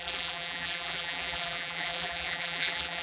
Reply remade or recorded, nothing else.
remade